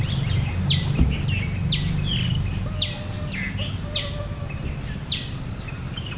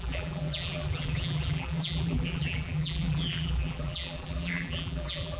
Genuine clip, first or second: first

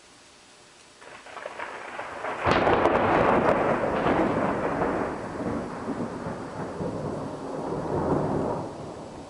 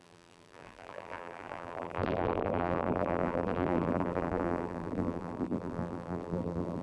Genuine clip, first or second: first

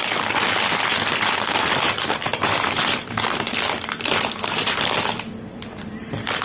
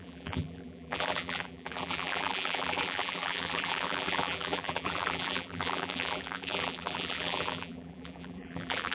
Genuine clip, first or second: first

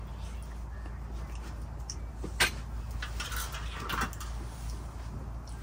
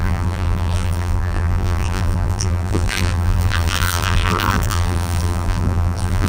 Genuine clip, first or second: first